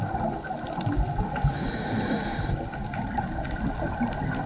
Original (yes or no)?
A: yes